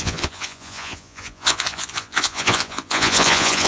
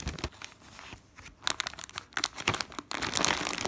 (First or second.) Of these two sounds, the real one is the second